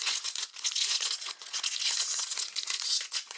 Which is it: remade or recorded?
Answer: remade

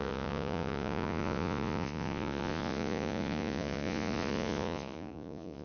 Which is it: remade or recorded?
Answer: remade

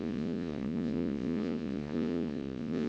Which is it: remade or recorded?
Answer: remade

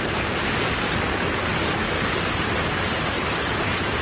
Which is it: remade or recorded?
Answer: recorded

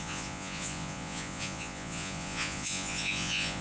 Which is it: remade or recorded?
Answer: remade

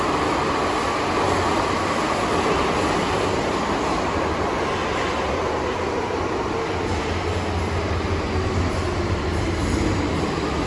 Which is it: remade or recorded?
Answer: recorded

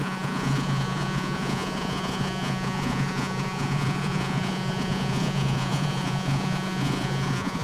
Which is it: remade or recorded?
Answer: remade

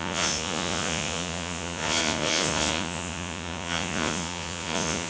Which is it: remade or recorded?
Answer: remade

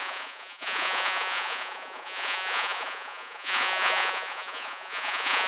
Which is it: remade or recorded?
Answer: remade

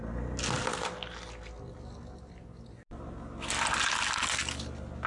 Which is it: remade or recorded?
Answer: recorded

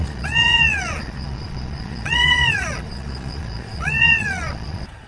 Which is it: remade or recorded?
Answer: remade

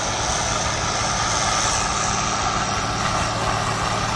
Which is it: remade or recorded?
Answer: recorded